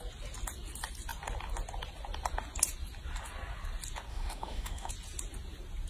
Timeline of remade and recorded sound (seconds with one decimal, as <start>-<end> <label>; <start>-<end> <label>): 0.0-4.1 recorded; 4.1-4.9 remade; 4.9-5.9 recorded